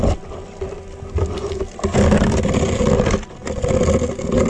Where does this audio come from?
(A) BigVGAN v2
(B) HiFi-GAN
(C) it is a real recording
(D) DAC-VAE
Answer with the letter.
C